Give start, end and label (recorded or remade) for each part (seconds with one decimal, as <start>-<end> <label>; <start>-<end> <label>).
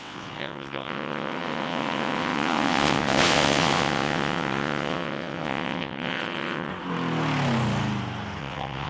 0.0-6.7 remade; 6.7-8.4 recorded; 8.4-8.9 remade